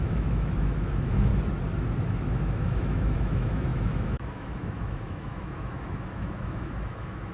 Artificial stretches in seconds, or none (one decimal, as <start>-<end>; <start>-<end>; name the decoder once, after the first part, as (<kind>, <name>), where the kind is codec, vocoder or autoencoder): 0.0-1.3 (autoencoder, DAC-VAE); 2.0-7.3